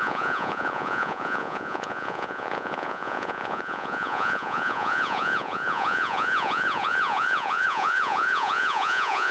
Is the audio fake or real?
fake